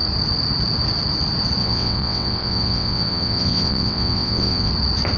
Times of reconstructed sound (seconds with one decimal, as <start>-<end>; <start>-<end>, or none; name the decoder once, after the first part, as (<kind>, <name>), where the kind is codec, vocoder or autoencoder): 1.6-4.7 (vocoder, WaveNeXt)